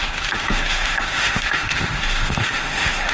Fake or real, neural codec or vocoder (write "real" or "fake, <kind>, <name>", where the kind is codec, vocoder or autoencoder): fake, autoencoder, DAC-VAE